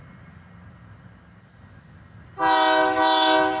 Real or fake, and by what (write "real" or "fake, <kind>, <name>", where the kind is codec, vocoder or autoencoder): real